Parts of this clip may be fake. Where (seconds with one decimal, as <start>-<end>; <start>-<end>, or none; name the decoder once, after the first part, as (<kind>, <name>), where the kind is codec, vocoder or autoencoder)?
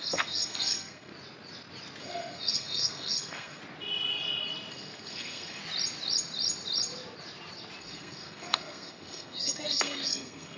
0.0-1.1 (codec, SNAC); 2.0-3.6; 4.7-5.6; 7.8-10.6